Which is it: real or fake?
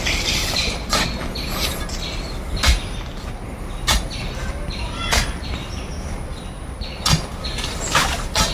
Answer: real